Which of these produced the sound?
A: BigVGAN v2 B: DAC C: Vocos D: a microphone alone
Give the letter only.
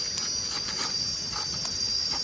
D